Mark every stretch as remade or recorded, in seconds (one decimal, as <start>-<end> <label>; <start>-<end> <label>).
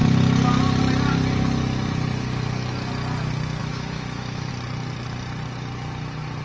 0.0-3.6 recorded; 3.6-4.5 remade; 4.5-6.4 recorded